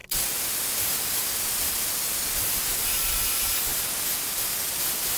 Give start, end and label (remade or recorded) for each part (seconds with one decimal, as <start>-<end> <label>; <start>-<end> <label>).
0.0-5.2 recorded